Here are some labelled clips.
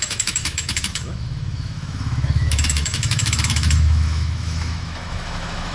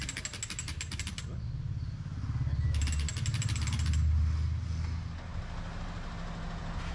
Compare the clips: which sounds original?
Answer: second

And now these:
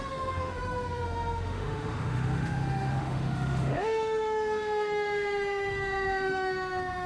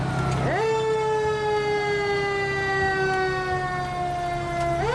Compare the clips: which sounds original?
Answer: second